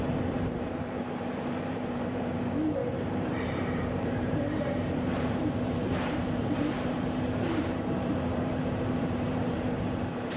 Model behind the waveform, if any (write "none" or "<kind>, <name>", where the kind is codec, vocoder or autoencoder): vocoder, BigVGAN v2